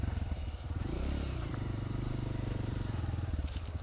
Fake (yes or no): yes